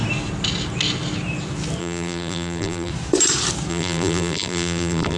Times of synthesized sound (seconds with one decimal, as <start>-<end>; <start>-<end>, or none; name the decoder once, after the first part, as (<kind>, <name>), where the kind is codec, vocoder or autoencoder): 1.8-2.9 (vocoder, BigVGAN v2); 3.7-5.2